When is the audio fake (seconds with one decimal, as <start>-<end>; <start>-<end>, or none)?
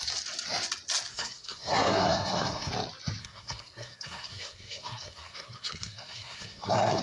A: 1.1-2.7; 3.2-7.0